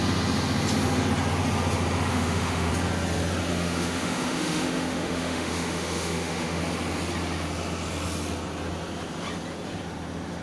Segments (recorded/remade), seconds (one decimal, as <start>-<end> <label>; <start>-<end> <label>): 0.0-2.1 recorded; 2.1-2.7 remade; 2.7-3.5 recorded; 3.5-6.6 remade; 6.6-10.4 recorded